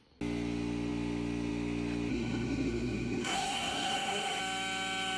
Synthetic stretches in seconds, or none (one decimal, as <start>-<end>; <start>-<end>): 2.1-4.4